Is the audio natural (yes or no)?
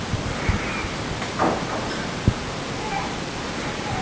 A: yes